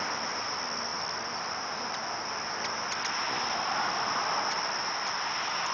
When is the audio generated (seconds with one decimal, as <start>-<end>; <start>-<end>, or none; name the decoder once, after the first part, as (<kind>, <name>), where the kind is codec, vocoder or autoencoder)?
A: none